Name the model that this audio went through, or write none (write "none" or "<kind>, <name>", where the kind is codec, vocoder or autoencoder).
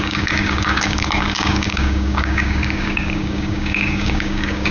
codec, DAC